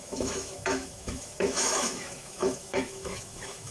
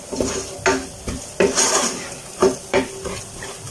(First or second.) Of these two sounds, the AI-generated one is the first